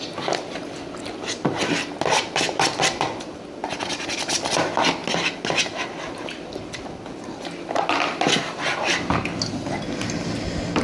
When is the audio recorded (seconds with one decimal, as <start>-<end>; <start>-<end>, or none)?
0.0-10.8